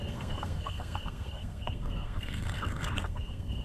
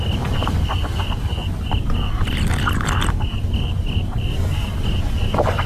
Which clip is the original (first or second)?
second